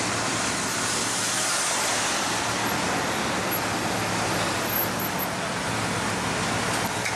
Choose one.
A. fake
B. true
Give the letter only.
B